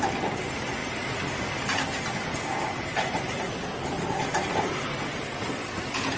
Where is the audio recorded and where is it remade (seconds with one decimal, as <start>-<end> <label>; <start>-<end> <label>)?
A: 0.0-6.2 recorded